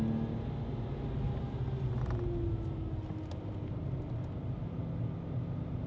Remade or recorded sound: recorded